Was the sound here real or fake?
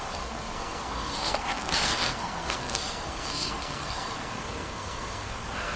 fake